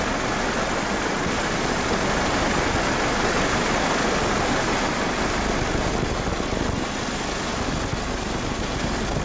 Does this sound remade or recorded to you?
recorded